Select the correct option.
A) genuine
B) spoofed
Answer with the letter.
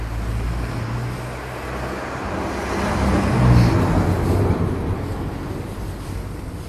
A